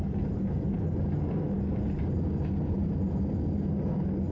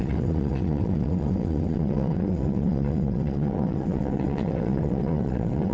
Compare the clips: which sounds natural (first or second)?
first